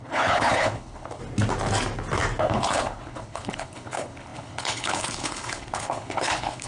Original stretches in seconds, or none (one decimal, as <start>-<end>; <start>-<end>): 1.2-2.4